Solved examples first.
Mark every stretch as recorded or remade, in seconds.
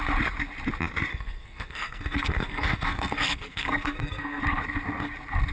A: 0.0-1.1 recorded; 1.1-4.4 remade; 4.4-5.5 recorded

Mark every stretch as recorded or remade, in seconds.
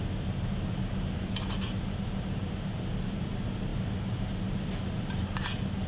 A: 0.0-5.9 recorded